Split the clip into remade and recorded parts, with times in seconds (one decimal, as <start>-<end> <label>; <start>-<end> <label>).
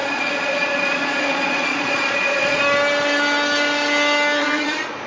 0.0-2.6 remade; 2.6-4.4 recorded; 4.4-5.1 remade